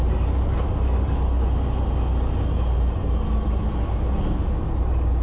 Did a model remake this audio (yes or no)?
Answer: no